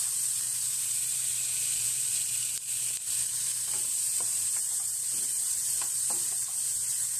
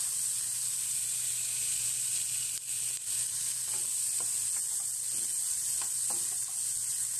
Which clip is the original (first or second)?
second